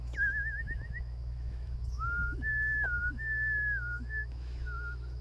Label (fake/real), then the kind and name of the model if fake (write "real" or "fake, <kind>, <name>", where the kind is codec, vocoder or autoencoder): fake, autoencoder, DAC-VAE